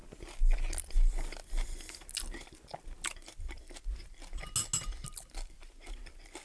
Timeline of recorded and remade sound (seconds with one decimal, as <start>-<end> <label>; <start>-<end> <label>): 0.0-6.4 recorded

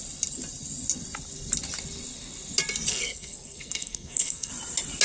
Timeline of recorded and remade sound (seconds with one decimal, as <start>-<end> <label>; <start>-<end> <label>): 0.0-2.9 recorded; 2.9-4.5 remade; 4.5-5.0 recorded

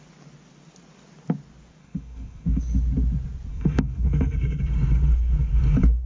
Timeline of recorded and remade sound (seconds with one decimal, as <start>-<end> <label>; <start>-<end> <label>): 0.0-1.8 recorded; 1.8-2.6 remade; 2.6-3.5 recorded; 3.5-4.6 remade; 4.6-6.1 recorded

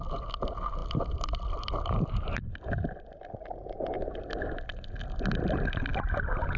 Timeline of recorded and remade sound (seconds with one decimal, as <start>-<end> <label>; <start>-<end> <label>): 0.0-6.6 recorded

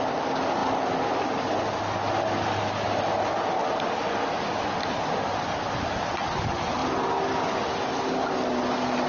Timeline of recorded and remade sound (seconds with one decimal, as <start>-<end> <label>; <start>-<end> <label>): 0.0-9.1 recorded